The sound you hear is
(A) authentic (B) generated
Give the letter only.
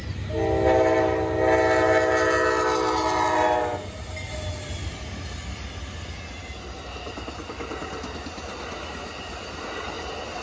A